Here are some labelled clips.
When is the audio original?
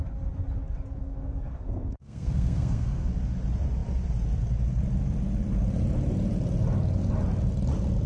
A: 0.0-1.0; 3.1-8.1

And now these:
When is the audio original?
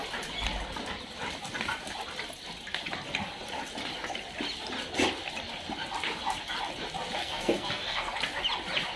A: 0.0-7.2; 8.2-9.0